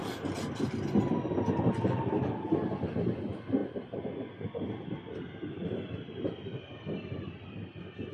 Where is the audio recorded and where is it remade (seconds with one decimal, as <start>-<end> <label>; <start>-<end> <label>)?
0.0-8.1 recorded